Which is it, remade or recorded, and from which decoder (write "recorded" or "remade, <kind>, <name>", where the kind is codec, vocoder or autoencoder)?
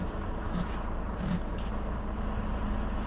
recorded